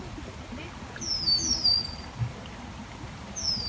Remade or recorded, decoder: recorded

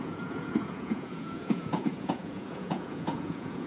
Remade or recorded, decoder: remade, vocoder, Vocos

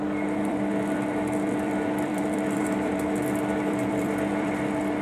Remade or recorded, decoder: remade, vocoder, BigVGAN v2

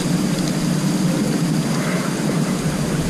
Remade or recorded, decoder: recorded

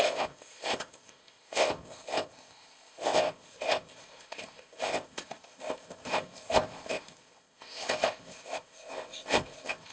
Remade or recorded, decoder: remade, codec, ZipCodec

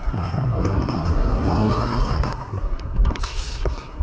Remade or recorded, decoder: remade, codec, SNAC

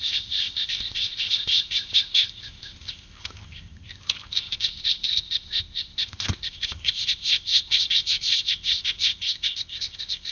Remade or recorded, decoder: remade, codec, ZipCodec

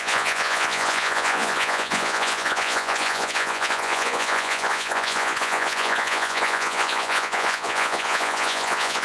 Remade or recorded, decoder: remade, vocoder, Vocos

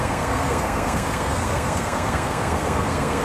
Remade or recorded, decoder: remade, codec, SNAC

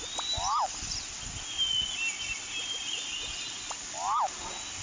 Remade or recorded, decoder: recorded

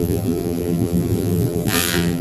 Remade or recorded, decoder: remade, vocoder, BigVGAN v2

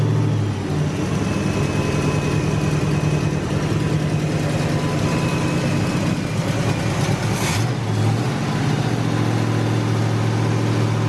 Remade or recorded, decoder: recorded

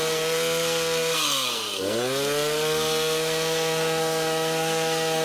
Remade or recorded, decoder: remade, codec, SNAC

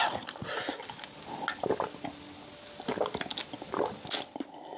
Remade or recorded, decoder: recorded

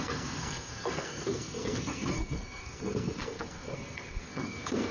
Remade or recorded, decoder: remade, codec, SNAC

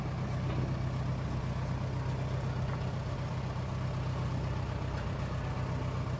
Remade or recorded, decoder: recorded